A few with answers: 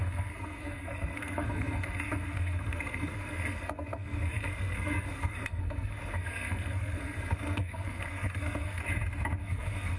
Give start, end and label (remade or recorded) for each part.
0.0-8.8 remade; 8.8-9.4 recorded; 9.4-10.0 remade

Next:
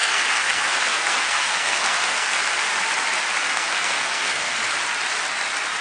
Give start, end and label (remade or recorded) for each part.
0.0-2.7 remade; 2.7-3.4 recorded; 3.4-4.6 remade; 4.6-5.8 recorded

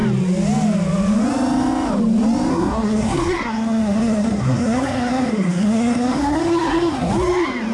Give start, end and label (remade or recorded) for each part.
0.0-2.5 recorded; 2.5-7.1 remade; 7.1-7.7 recorded

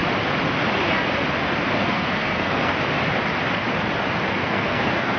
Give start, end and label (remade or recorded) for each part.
0.0-1.8 recorded; 1.8-2.7 remade; 2.7-4.3 recorded; 4.3-5.2 remade

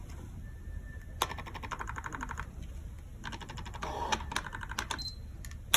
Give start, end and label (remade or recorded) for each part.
0.0-5.8 recorded

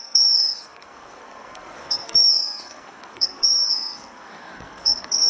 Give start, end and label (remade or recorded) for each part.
0.0-5.3 remade

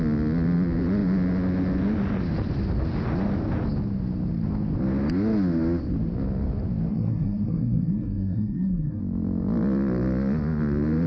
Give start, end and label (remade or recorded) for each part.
0.0-6.9 recorded; 6.9-9.0 remade; 9.0-11.1 recorded